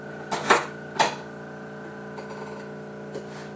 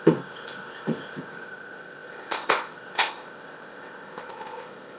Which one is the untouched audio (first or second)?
first